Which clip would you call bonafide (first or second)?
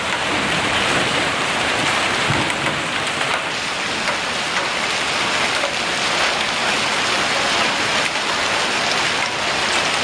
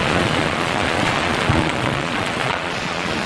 first